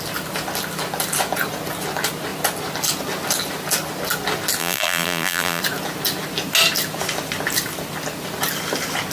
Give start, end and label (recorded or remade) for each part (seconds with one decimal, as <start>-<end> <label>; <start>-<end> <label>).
0.0-4.6 recorded; 4.6-5.6 remade; 5.6-9.1 recorded